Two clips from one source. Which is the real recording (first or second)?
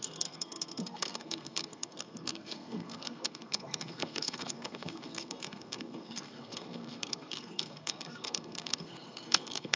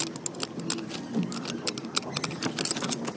second